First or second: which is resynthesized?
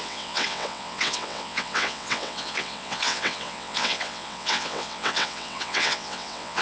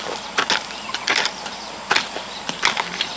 first